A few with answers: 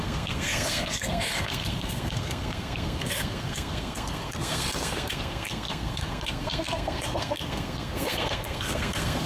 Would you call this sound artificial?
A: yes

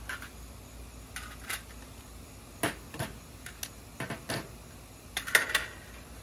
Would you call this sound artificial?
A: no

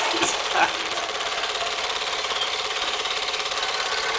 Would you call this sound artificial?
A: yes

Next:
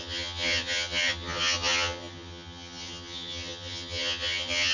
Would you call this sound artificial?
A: yes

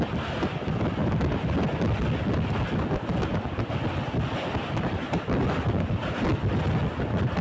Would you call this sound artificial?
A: no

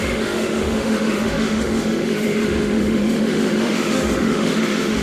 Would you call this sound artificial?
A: yes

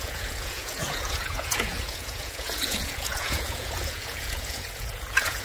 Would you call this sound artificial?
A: yes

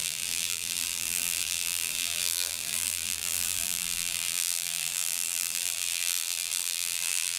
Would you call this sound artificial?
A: yes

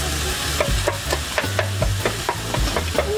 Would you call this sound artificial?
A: no